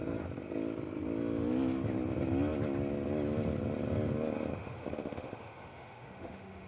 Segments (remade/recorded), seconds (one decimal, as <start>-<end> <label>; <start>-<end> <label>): 0.0-4.5 recorded; 4.5-6.7 remade

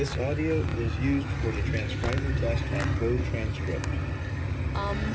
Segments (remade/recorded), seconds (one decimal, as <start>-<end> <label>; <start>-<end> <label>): 0.0-5.1 recorded

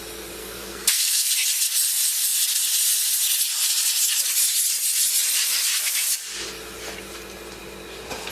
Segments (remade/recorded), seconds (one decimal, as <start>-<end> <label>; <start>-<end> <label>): 0.0-0.4 recorded; 0.4-1.3 remade; 1.3-8.3 recorded

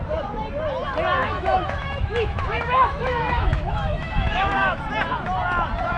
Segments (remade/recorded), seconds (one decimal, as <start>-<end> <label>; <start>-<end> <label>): 0.0-1.2 recorded; 1.2-4.8 remade; 4.8-6.0 recorded

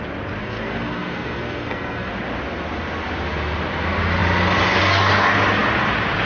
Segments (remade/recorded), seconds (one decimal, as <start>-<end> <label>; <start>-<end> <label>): 0.0-0.4 recorded; 0.4-2.1 remade; 2.1-6.3 recorded

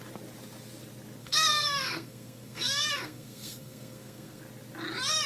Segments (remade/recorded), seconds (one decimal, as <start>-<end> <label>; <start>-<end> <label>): 0.0-1.2 recorded; 1.2-4.4 remade; 4.4-5.3 recorded

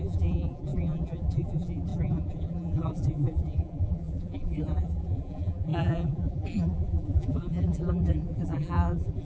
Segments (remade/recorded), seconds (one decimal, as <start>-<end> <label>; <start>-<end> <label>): 0.0-9.2 remade

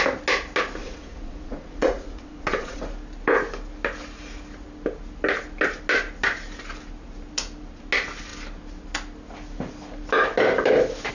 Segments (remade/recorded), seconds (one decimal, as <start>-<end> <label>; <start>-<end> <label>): 0.0-0.8 recorded; 0.8-2.8 remade; 2.8-11.1 recorded